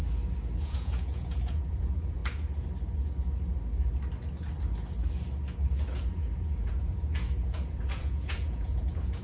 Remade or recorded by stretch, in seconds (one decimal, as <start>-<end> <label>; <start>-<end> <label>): 0.0-0.6 recorded; 0.6-2.2 remade; 2.2-6.1 recorded; 6.1-9.2 remade